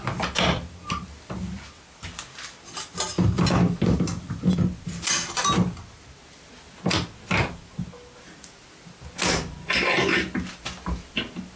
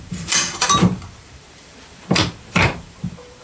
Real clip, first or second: first